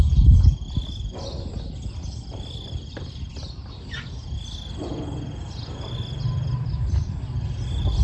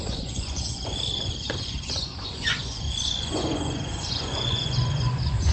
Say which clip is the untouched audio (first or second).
first